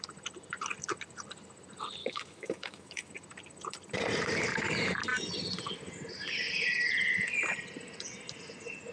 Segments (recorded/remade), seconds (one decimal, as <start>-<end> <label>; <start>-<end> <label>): 0.0-2.0 recorded; 2.0-3.1 remade; 3.1-8.9 recorded